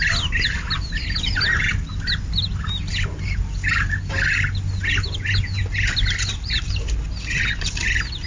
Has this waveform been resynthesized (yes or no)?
no